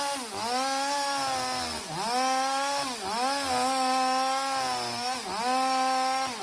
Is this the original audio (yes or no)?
yes